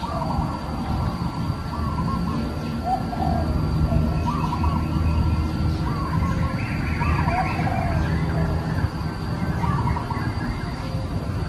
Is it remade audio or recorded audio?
recorded